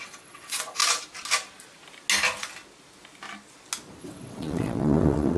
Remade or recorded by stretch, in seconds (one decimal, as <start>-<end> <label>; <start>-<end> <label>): 0.0-0.8 remade; 0.8-4.0 recorded; 4.0-5.4 remade